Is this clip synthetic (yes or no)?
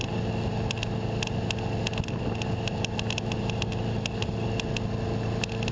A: no